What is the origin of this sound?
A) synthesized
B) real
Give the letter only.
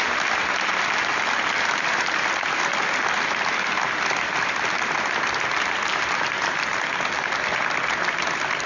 B